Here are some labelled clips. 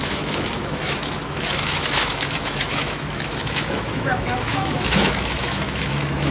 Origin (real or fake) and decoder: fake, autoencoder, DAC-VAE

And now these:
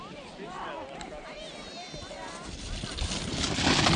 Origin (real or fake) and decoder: real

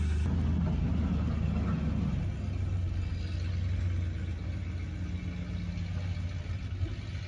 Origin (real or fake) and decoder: real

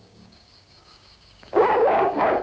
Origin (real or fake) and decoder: fake, codec, DAC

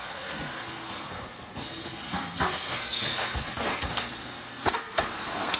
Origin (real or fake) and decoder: fake, codec, SNAC